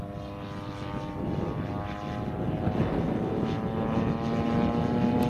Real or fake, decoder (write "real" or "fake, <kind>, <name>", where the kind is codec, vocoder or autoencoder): real